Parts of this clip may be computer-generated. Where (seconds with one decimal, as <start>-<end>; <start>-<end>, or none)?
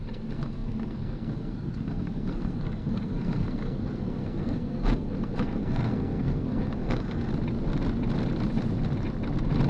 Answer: 0.0-7.3